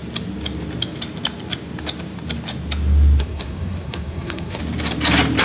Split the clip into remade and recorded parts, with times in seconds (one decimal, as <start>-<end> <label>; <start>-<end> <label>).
0.0-3.2 recorded; 3.2-4.6 remade; 4.6-5.4 recorded